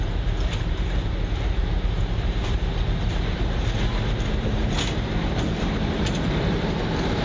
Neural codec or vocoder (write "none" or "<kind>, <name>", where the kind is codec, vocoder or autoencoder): vocoder, BigVGAN v2